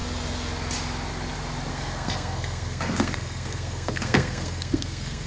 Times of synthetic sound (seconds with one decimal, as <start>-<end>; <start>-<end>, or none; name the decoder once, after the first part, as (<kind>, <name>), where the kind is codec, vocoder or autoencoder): 1.7-5.3 (codec, SNAC)